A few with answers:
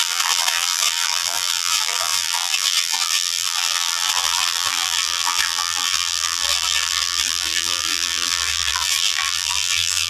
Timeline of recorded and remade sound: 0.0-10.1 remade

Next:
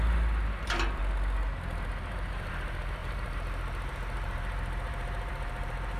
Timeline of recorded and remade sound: 0.0-1.0 remade; 1.0-2.1 recorded; 2.1-6.0 remade

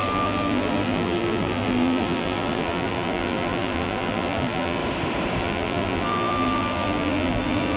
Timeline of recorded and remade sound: 0.0-4.8 remade; 4.8-5.4 recorded; 5.4-7.8 remade

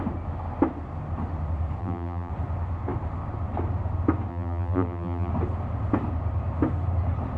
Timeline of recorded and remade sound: 0.0-1.8 recorded; 1.8-2.3 remade; 2.3-4.3 recorded; 4.3-5.3 remade; 5.3-7.4 recorded

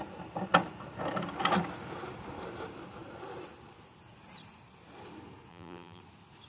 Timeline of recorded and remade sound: 0.0-5.5 recorded; 5.5-6.0 remade; 6.0-6.5 recorded